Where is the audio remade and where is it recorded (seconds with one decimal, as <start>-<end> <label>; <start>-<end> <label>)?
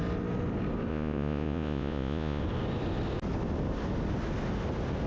0.0-0.9 recorded; 0.9-2.4 remade; 2.4-5.1 recorded